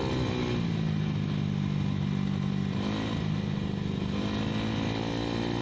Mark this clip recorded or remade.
recorded